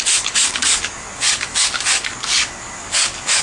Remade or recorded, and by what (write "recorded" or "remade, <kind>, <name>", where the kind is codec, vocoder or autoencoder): remade, codec, DAC